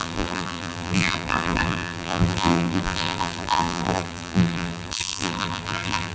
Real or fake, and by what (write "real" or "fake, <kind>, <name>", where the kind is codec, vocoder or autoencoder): fake, vocoder, BigVGAN v2